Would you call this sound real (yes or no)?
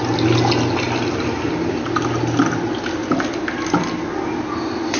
yes